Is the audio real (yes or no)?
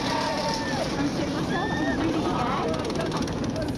no